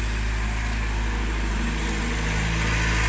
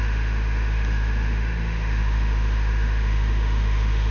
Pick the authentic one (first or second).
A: first